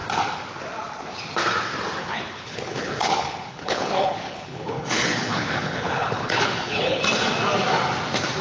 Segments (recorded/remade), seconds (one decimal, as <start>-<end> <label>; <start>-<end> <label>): 0.0-2.0 recorded; 2.0-7.0 remade; 7.0-8.4 recorded